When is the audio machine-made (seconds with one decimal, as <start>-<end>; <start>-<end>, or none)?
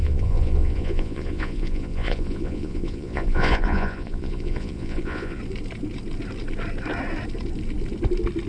0.0-5.4